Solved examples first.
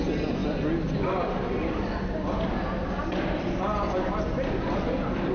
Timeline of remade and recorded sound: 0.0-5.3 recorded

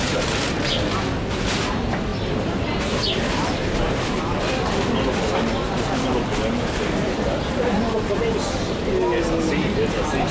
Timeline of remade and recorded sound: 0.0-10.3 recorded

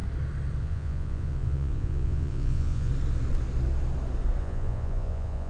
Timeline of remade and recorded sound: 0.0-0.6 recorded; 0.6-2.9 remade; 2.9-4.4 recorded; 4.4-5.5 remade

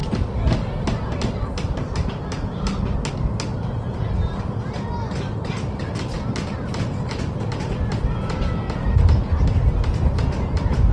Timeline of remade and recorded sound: 0.0-10.9 recorded

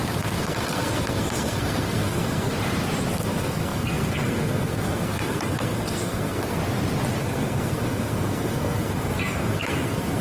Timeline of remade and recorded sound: 0.0-2.5 remade; 2.5-3.1 recorded; 3.1-6.6 remade; 6.6-7.2 recorded; 7.2-10.2 remade

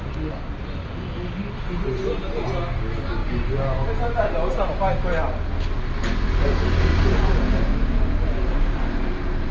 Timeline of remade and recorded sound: 0.0-6.9 recorded; 6.9-9.5 remade